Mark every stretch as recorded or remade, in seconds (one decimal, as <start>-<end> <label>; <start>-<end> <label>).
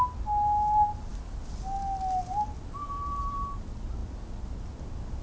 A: 0.0-5.2 recorded